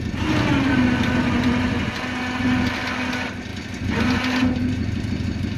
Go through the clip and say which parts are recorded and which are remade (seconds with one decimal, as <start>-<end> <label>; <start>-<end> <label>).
0.0-5.6 recorded